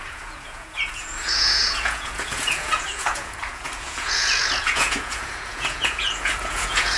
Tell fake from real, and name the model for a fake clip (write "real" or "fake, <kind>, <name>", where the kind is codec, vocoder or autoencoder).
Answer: fake, vocoder, Vocos